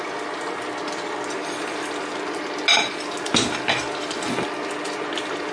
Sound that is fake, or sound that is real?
real